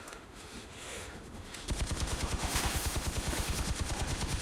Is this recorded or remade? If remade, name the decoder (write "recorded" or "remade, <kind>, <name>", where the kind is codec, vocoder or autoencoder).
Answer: remade, autoencoder, DAC-VAE